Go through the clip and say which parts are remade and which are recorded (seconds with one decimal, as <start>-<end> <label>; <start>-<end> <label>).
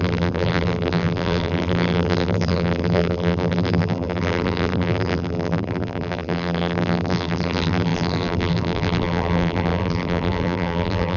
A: 0.0-11.2 remade